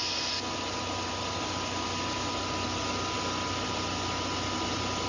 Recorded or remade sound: recorded